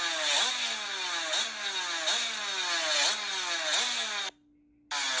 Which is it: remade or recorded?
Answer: recorded